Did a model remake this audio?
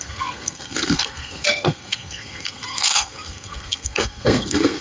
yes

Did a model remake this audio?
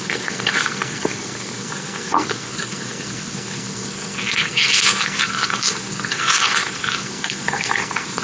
yes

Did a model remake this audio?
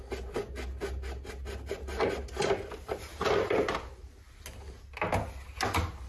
no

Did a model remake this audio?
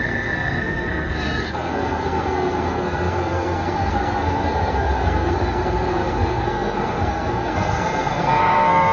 yes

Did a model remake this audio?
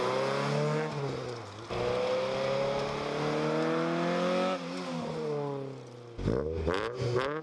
no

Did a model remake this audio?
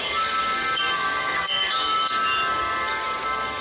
yes